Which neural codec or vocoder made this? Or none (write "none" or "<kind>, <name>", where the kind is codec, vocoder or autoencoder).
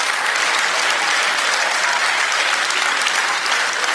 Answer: none